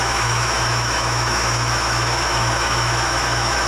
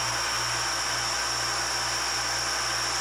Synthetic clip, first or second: first